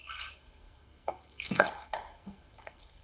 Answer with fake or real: fake